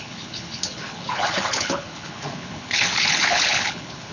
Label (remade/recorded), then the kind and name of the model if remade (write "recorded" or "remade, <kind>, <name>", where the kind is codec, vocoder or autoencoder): remade, codec, HILCodec